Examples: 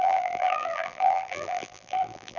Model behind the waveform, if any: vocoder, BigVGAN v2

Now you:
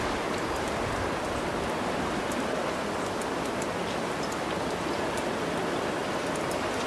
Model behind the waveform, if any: none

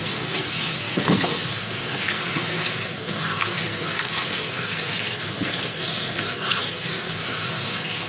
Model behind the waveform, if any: codec, SNAC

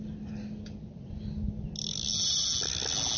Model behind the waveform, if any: none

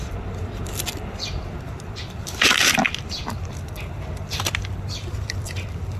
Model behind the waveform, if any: vocoder, BigVGAN v2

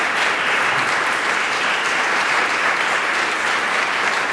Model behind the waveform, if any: vocoder, BigVGAN v2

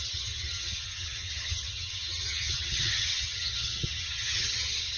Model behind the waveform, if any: vocoder, HiFi-GAN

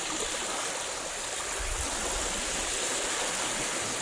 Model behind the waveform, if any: none